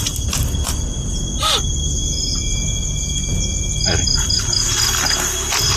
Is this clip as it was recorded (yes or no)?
yes